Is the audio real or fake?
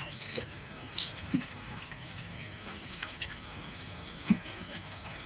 fake